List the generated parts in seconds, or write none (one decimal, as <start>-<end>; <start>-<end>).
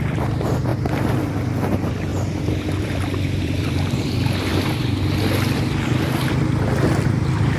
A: 0.7-1.2; 2.1-4.0